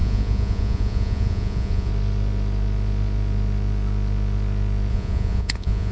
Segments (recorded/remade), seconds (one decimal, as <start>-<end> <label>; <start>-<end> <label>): 0.0-1.9 remade; 1.9-4.9 recorded; 4.9-5.9 remade